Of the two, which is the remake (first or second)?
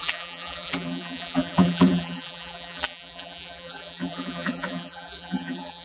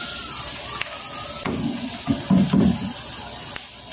first